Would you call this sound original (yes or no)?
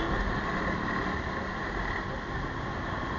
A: yes